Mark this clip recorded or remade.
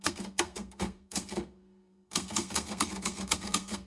remade